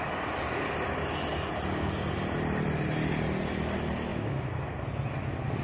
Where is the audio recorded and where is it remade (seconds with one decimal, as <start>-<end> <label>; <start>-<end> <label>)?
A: 0.0-4.1 recorded; 4.1-4.6 remade; 4.6-5.6 recorded

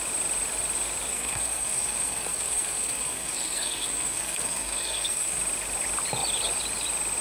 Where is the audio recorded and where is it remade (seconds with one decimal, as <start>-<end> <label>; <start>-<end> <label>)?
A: 0.0-1.1 recorded; 1.1-5.4 remade; 5.4-7.2 recorded

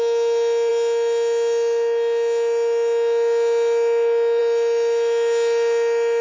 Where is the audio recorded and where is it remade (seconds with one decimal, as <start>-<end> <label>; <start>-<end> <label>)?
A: 0.0-6.2 recorded

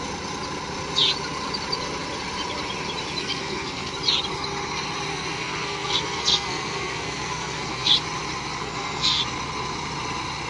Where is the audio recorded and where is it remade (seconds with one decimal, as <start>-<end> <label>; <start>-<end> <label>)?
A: 0.0-3.2 recorded; 3.2-3.9 remade; 3.9-5.1 recorded; 5.1-7.9 remade; 7.9-8.6 recorded; 8.6-9.2 remade; 9.2-10.5 recorded

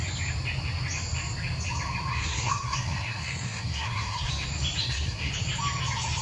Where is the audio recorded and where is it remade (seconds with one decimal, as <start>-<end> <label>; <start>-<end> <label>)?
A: 0.0-2.1 recorded; 2.1-4.3 remade; 4.3-4.8 recorded; 4.8-5.3 remade; 5.3-6.2 recorded

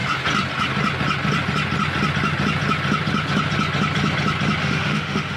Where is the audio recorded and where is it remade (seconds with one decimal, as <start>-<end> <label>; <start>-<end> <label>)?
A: 0.0-4.6 recorded; 4.6-5.4 remade

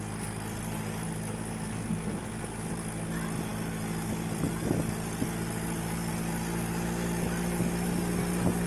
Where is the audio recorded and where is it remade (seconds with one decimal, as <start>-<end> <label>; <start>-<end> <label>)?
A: 0.0-8.7 recorded